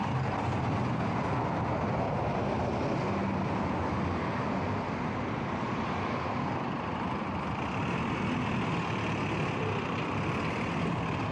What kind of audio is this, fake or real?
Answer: real